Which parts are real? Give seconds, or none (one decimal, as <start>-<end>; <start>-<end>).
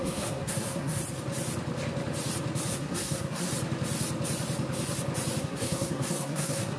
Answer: 1.0-2.7; 3.5-5.4